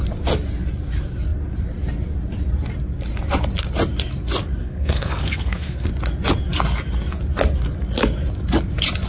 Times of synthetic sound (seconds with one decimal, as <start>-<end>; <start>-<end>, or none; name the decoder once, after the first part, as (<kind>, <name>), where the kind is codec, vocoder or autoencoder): 4.6-5.9 (codec, SNAC)